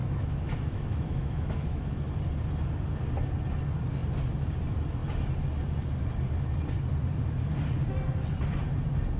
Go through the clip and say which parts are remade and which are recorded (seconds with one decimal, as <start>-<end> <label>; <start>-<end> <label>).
0.0-2.0 remade; 2.0-9.2 recorded